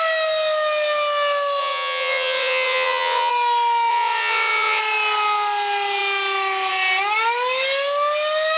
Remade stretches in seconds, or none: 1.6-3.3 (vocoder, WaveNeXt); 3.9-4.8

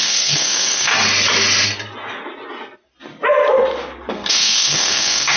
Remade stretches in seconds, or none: 0.0-0.9 (codec, SNAC); 4.1-5.4

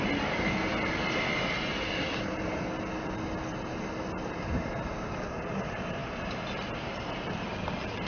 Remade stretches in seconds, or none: none